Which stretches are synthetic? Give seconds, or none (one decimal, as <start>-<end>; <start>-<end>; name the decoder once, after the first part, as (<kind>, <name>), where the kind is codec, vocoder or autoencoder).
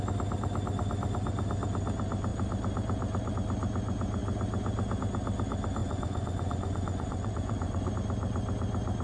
5.8-7.9 (vocoder, Vocos)